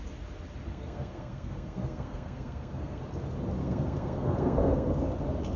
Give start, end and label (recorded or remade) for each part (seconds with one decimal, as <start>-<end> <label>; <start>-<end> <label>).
0.0-0.7 recorded; 0.7-3.0 remade; 3.0-3.6 recorded; 3.6-5.1 remade; 5.1-5.6 recorded